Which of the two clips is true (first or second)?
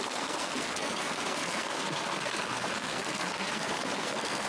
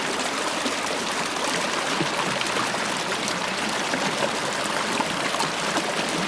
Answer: second